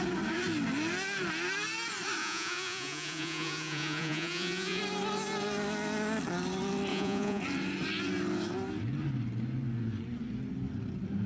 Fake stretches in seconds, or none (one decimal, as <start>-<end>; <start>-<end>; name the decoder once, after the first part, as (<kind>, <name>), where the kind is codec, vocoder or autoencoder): 2.2-4.8 (vocoder, Vocos); 6.9-7.4